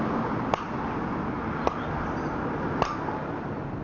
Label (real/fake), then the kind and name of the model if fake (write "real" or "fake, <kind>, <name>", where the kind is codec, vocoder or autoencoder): real